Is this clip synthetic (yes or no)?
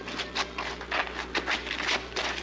no